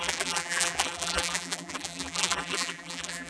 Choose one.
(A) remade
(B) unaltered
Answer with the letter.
A